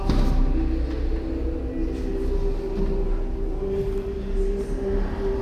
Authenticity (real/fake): real